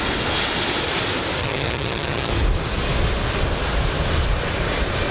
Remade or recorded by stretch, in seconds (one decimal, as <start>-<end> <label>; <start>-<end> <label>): 0.0-1.4 recorded; 1.4-2.3 remade; 2.3-5.1 recorded